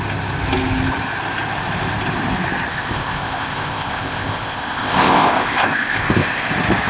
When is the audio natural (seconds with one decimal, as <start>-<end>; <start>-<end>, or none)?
0.0-2.7; 6.5-6.9